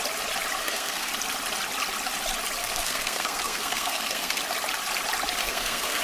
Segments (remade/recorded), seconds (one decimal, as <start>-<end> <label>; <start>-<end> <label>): 0.0-0.6 recorded; 0.6-1.1 remade; 1.1-2.6 recorded; 2.6-4.4 remade; 4.4-5.4 recorded; 5.4-6.0 remade

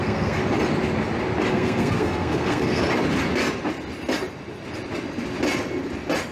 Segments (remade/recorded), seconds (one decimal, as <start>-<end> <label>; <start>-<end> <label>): 0.0-0.4 remade; 0.4-1.5 recorded; 1.5-2.8 remade; 2.8-6.3 recorded

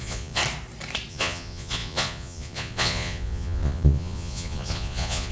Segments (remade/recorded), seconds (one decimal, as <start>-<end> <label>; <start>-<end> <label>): 0.0-0.4 remade; 0.4-1.1 recorded; 1.1-5.3 remade

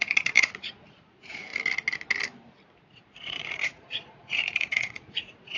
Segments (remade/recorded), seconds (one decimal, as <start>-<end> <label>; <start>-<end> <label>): 0.0-1.5 remade; 1.5-2.9 recorded; 2.9-5.6 remade

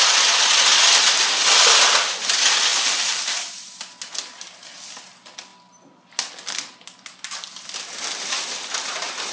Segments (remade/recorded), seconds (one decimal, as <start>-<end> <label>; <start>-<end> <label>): 0.0-2.7 recorded; 2.7-3.8 remade; 3.8-9.3 recorded

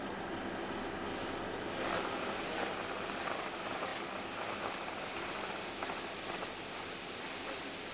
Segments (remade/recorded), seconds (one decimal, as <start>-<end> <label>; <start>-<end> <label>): 0.0-7.9 recorded

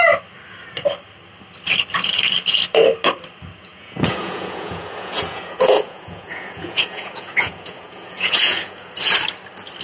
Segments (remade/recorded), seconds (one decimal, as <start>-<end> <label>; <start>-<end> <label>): 0.0-3.7 recorded; 3.7-8.9 remade; 8.9-9.8 recorded

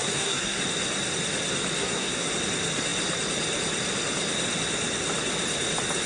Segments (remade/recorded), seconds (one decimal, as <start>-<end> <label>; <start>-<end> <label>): 0.0-0.6 remade; 0.6-1.8 recorded; 1.8-2.3 remade; 2.3-6.1 recorded